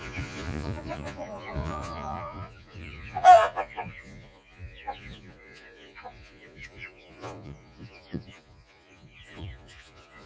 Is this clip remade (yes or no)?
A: yes